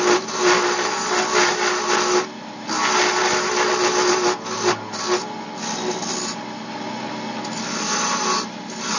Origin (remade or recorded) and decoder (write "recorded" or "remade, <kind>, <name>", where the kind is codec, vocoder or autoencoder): recorded